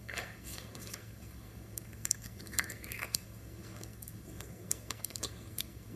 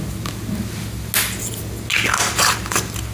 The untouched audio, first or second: second